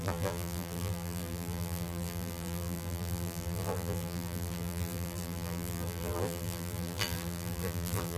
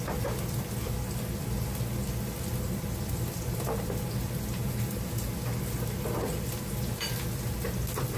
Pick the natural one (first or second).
second